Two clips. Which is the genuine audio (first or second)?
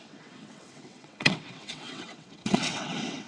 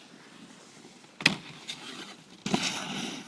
second